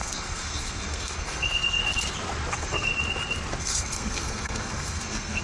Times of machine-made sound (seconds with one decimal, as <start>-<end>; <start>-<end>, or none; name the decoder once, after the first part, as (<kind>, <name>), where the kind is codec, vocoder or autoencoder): 0.0-1.8 (codec, SNAC); 2.5-2.9; 3.6-5.4

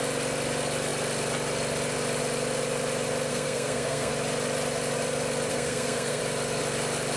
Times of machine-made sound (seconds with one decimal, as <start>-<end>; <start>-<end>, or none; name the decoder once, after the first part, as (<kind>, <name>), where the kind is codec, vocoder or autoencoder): 3.3-4.1 (codec, SNAC); 5.5-6.2

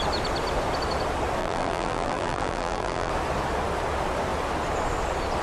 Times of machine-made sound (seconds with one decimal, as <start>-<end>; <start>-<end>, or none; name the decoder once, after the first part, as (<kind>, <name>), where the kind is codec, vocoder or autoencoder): 1.4-3.1 (vocoder, BigVGAN v2)

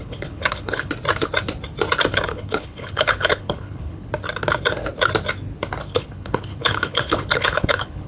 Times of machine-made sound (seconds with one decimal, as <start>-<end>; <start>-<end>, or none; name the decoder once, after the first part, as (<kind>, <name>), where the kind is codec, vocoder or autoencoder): 0.0-0.9 (codec, HILCodec); 2.1-4.1; 5.9-8.1

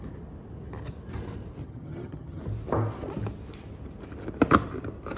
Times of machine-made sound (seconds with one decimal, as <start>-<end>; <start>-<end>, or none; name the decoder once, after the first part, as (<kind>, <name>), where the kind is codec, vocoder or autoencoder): 1.6-2.4 (vocoder, HiFi-GAN)